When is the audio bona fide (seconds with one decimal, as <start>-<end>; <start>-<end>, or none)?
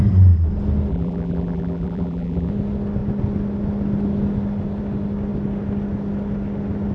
0.0-0.9; 2.5-6.9